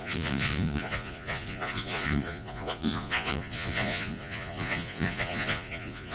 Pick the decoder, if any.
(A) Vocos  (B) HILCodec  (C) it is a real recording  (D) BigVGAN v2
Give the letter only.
A